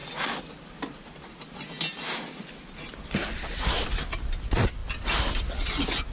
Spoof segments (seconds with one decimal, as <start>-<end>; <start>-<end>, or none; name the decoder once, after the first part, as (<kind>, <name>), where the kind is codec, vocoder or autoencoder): none